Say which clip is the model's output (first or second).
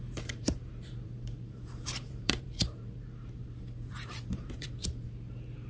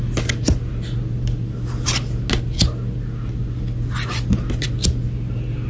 first